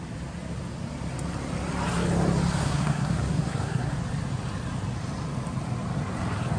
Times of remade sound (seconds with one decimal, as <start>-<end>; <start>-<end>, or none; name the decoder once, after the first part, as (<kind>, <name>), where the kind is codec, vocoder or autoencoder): 2.6-3.9 (codec, SNAC)